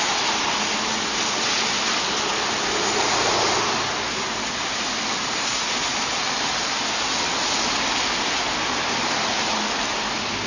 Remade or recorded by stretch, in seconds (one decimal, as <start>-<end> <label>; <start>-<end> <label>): 0.0-10.5 recorded